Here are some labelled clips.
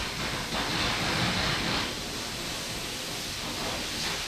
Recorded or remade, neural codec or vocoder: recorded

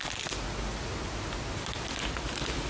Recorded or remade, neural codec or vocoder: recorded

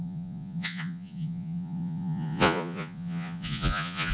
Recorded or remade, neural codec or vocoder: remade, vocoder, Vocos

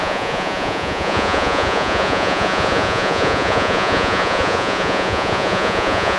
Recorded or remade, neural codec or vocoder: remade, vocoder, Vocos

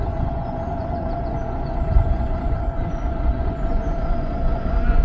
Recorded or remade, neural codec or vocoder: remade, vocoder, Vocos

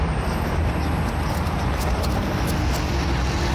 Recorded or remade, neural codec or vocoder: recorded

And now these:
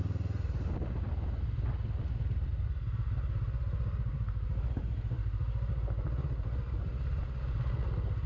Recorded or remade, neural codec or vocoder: recorded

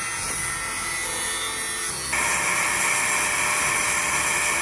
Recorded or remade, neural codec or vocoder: recorded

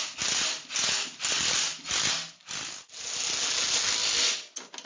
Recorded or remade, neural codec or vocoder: recorded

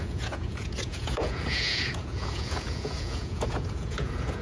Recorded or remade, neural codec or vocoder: remade, vocoder, Vocos